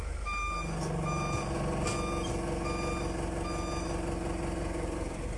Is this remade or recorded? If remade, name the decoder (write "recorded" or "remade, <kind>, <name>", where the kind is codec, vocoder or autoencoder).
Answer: recorded